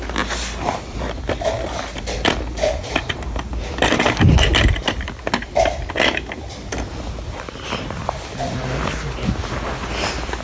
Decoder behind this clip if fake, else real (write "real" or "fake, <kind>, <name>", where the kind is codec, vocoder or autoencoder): real